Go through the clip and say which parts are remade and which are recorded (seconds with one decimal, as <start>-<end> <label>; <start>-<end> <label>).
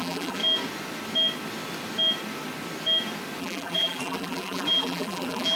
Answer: 0.0-0.4 remade; 0.4-3.4 recorded; 3.4-5.6 remade